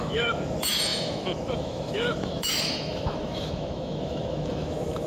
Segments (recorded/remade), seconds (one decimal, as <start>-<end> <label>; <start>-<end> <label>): 0.0-5.1 remade